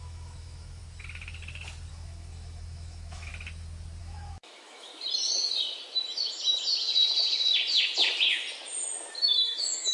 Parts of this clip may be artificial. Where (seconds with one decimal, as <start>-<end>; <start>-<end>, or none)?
0.0-0.8; 1.9-3.3; 4.0-4.9; 9.2-9.9